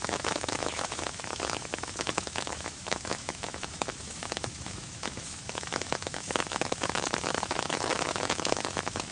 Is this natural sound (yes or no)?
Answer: no